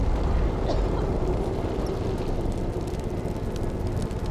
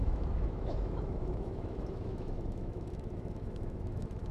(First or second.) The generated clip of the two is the second